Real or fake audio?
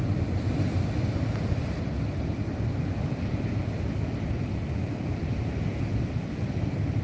real